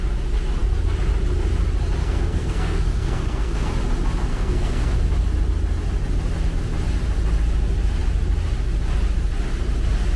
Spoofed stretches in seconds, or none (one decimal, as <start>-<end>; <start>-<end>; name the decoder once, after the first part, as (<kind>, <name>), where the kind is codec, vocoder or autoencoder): 2.0-3.7 (codec, SNAC); 4.3-5.0